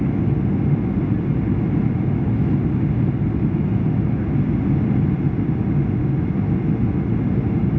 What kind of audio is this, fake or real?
real